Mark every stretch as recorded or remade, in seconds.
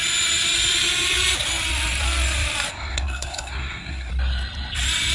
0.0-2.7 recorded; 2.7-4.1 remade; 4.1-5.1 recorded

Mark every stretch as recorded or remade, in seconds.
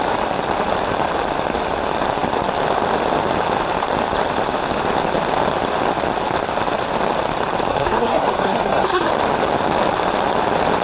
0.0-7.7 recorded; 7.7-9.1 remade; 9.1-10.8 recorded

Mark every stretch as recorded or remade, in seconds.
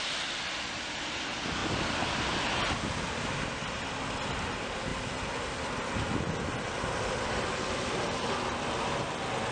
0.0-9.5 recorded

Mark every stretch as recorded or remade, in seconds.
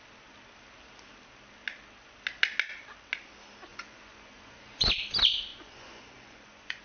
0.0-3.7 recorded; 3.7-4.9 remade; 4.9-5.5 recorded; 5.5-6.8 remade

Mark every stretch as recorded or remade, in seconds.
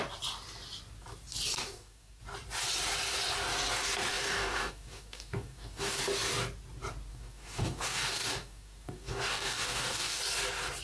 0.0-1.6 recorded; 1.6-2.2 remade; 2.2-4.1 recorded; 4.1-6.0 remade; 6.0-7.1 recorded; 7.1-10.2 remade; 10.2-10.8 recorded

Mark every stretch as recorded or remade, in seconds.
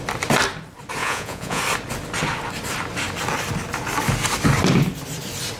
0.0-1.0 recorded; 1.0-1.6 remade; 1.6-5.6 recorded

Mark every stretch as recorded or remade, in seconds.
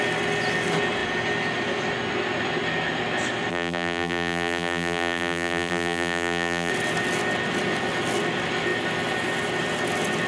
0.0-3.5 recorded; 3.5-6.7 remade; 6.7-10.3 recorded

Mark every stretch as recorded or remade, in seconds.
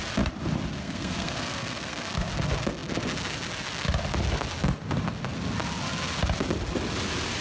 0.0-0.8 recorded; 0.8-2.3 remade; 2.3-7.4 recorded